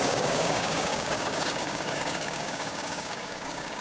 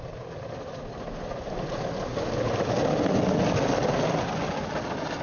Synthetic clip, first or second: first